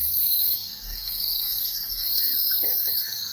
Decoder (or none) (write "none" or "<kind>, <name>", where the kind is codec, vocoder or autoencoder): codec, SNAC